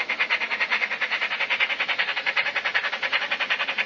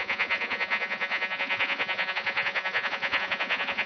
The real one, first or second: first